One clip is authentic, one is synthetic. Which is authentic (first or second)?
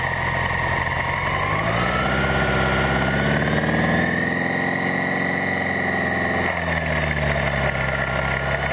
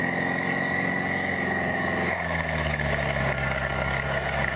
first